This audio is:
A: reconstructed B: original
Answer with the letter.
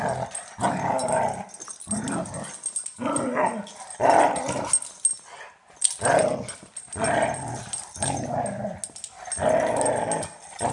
B